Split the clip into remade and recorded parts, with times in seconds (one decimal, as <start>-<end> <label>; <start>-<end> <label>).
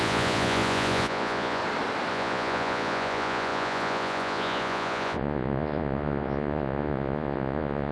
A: 0.0-1.6 remade; 1.6-2.1 recorded; 2.1-7.9 remade